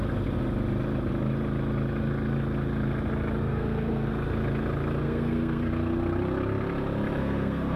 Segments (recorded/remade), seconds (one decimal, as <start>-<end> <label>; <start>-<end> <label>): 0.0-3.4 recorded; 3.4-4.1 remade; 4.1-5.0 recorded; 5.0-5.7 remade; 5.7-7.2 recorded; 7.2-7.8 remade